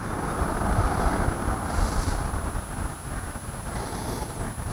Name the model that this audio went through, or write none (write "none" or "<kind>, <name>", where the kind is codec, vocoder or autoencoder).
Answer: none